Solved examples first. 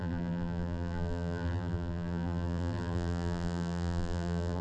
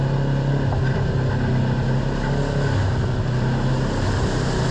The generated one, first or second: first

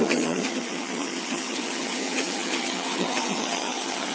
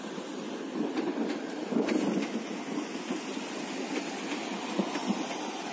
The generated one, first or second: first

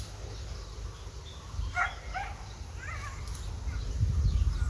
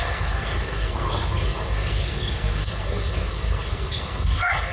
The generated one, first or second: second